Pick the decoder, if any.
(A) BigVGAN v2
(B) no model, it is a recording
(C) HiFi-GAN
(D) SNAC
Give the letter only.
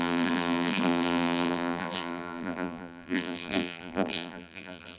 A